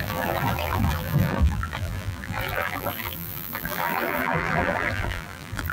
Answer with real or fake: fake